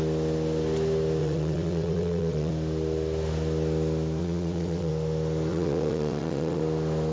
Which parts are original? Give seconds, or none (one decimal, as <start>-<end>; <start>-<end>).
0.0-1.2; 2.5-4.2; 4.9-5.5; 6.6-7.1